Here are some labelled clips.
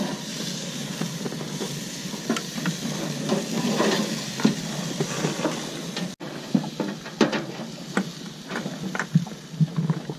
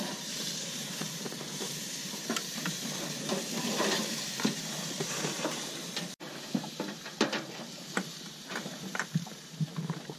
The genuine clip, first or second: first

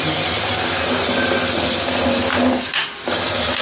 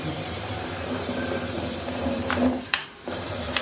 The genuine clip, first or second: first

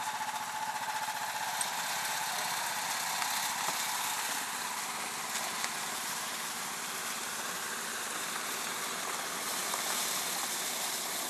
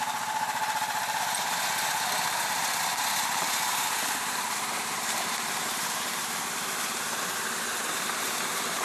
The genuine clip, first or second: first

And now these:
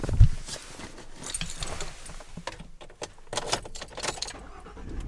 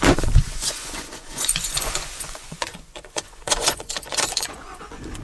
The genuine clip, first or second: first